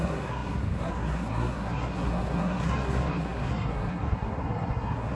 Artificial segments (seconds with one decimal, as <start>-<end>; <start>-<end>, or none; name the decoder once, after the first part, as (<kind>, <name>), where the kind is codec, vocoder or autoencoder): 0.0-5.1 (codec, SNAC)